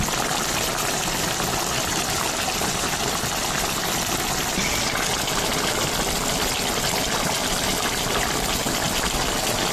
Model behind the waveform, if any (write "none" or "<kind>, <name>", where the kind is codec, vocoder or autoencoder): none